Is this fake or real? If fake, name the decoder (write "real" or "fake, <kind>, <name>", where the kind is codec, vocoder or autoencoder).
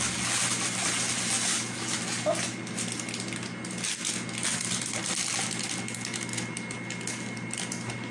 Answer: real